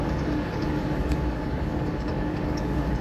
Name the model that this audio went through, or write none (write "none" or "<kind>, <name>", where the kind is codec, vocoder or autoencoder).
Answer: codec, DAC